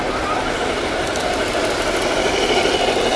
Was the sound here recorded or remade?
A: recorded